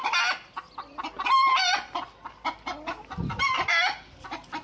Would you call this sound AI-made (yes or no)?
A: no